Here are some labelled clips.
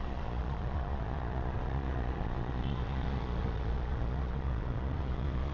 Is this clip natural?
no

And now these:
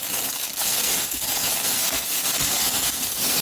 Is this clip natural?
no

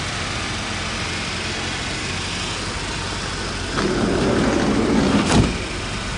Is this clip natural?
yes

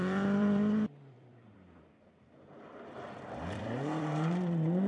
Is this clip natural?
no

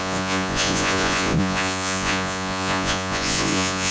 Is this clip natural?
no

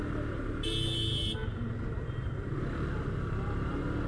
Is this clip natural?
yes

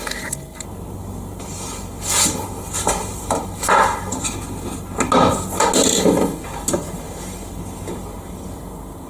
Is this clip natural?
yes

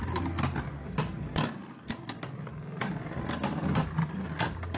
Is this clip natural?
yes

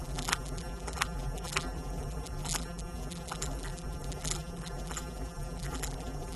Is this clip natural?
no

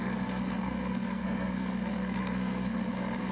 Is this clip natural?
no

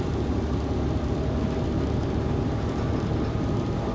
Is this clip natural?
yes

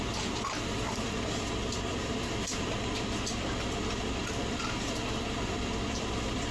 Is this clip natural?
no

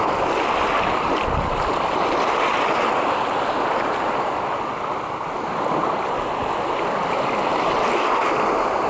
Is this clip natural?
yes